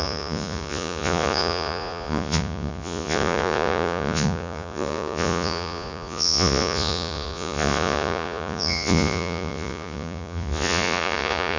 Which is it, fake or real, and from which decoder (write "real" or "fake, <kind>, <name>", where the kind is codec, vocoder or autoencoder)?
fake, vocoder, Vocos